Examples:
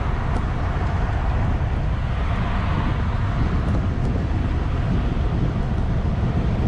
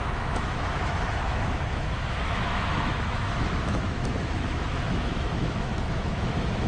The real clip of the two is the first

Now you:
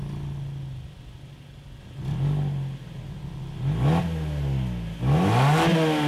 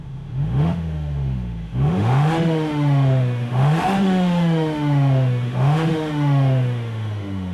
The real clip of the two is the first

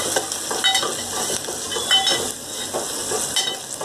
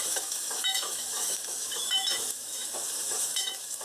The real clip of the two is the first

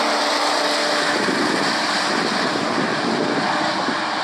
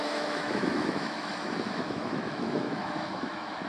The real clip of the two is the first